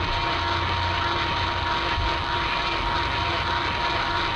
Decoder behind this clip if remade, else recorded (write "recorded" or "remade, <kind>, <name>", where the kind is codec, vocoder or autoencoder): recorded